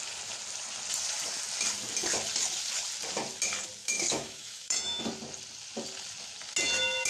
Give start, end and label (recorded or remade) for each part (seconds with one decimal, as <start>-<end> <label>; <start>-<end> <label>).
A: 0.0-3.8 recorded; 3.8-5.0 remade; 5.0-7.1 recorded